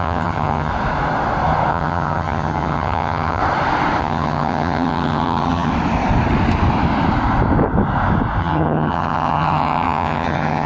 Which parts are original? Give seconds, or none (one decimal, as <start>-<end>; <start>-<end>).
0.7-1.7; 3.4-4.0; 5.7-8.4